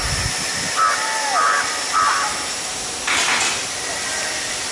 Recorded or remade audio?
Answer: recorded